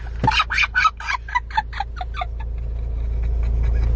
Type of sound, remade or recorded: recorded